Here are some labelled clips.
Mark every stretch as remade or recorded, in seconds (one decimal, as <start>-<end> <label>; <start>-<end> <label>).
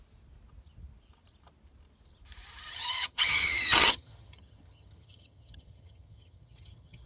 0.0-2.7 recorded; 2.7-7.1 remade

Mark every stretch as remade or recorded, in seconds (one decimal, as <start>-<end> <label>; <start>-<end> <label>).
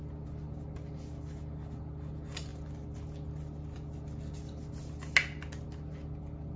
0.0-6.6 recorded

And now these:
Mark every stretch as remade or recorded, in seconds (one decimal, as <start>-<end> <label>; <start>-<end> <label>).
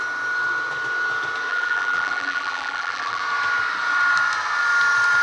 0.0-1.5 recorded; 1.5-3.2 remade; 3.2-5.2 recorded